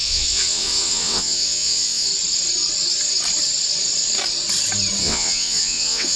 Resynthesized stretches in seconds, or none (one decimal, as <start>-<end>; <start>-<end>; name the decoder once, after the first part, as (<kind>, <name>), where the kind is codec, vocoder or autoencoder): 0.0-2.1 (vocoder, WaveNeXt); 5.0-6.2